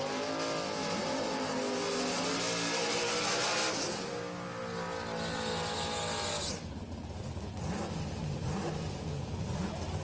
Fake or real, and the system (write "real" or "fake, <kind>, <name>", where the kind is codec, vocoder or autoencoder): real